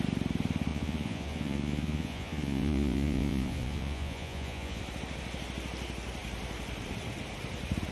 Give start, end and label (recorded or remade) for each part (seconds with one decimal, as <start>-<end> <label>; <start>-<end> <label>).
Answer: 0.0-0.7 recorded; 0.7-4.8 remade; 4.8-7.9 recorded